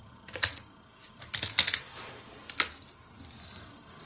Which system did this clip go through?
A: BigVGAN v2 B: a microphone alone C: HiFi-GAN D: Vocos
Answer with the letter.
B